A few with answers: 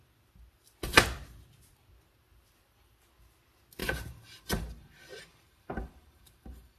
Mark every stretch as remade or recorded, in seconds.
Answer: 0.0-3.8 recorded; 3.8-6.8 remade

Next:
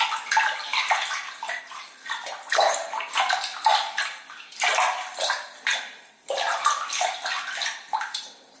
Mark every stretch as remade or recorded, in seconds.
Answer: 0.0-0.7 recorded; 0.7-3.4 remade; 3.4-5.7 recorded; 5.7-8.1 remade; 8.1-8.6 recorded

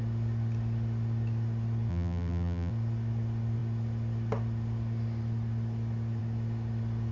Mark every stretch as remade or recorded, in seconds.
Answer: 0.0-1.9 recorded; 1.9-2.7 remade; 2.7-7.1 recorded

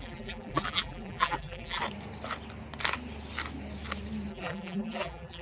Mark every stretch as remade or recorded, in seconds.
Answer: 0.0-1.8 remade; 1.8-4.3 recorded; 4.3-5.4 remade

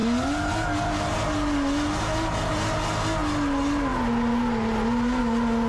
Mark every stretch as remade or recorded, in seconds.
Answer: 0.0-5.7 recorded

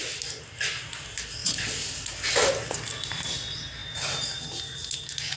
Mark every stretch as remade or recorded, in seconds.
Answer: 0.0-1.4 recorded; 1.4-2.5 remade; 2.5-5.4 recorded

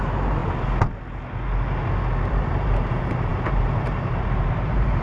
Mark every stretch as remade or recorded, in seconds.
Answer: 0.0-0.4 remade; 0.4-2.3 recorded; 2.3-5.0 remade